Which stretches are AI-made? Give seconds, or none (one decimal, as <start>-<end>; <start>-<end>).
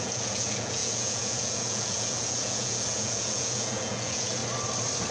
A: 0.0-4.4